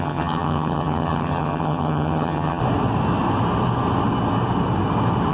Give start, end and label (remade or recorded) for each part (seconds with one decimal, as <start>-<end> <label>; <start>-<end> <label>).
0.0-2.6 remade; 2.6-5.3 recorded